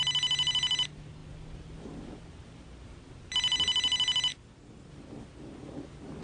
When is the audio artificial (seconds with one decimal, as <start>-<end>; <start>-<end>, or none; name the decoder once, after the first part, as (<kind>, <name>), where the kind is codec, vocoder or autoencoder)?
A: 4.3-4.9 (vocoder, BigVGAN v2)